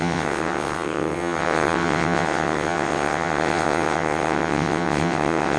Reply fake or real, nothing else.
fake